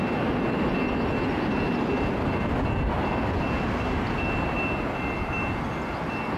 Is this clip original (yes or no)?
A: yes